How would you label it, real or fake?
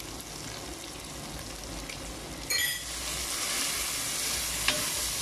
real